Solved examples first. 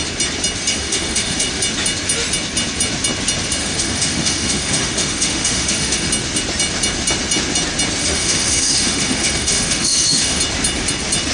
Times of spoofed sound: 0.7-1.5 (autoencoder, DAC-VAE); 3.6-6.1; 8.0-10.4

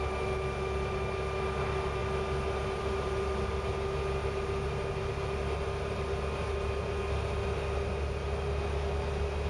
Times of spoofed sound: none

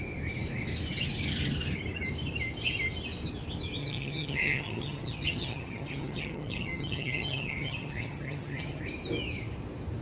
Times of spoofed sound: 3.8-8.8 (vocoder, HiFi-GAN)

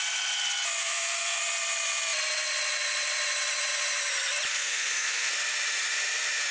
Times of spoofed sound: 0.8-1.4 (codec, SNAC); 4.5-5.3

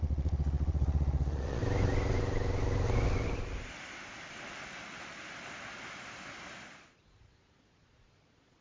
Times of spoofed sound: 0.0-1.6 (vocoder, Vocos); 6.8-8.6